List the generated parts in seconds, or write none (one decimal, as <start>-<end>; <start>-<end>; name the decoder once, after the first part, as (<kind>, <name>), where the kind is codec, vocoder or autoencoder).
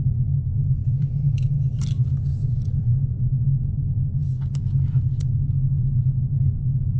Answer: 0.8-1.8 (vocoder, BigVGAN v2); 2.3-2.9